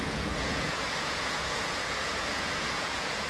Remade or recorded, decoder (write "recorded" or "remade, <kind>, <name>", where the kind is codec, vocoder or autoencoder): remade, vocoder, Vocos